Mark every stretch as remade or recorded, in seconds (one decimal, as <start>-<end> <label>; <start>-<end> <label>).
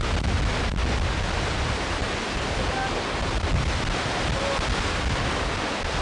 0.0-6.0 recorded